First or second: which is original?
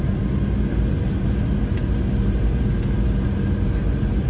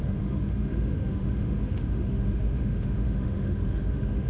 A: first